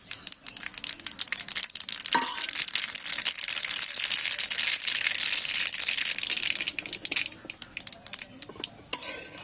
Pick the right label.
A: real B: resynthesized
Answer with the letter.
A